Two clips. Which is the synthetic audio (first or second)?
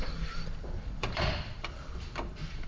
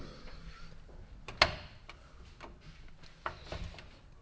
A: first